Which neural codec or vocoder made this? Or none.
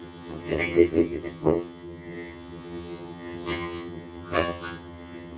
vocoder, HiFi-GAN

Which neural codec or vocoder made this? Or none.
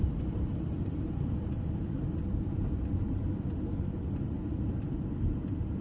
none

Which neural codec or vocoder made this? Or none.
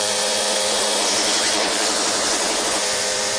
vocoder, Vocos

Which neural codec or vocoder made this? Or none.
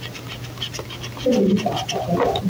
none